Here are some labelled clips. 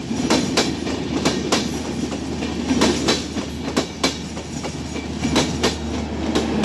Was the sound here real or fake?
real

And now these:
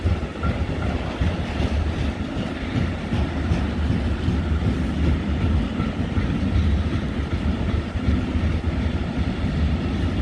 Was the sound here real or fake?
real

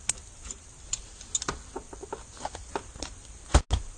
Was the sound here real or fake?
real